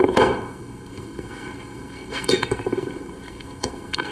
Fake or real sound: fake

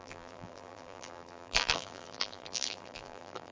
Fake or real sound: fake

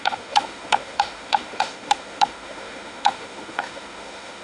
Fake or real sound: fake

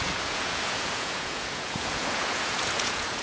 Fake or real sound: fake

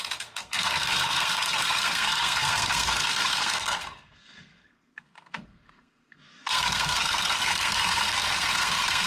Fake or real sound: fake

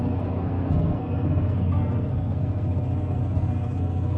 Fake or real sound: fake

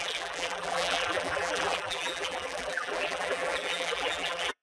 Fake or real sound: fake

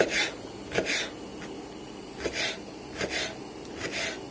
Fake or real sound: real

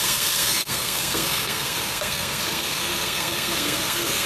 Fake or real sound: fake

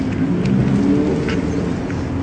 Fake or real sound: real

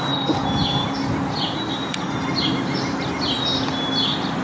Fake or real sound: real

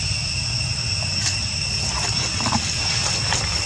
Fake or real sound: real